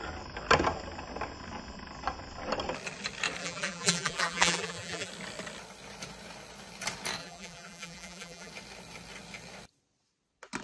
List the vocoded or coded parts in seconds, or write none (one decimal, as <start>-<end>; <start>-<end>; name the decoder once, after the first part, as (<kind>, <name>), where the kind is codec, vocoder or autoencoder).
3.4-5.1 (vocoder, BigVGAN v2); 7.2-8.5